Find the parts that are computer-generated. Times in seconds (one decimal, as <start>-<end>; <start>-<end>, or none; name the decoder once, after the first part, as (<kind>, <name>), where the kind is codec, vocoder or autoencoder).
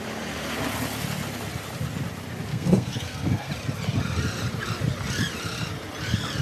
2.5-3.5 (codec, SNAC)